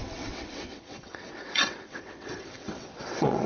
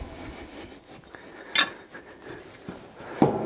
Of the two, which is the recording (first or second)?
second